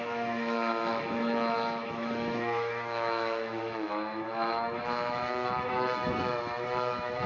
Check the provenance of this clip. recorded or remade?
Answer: remade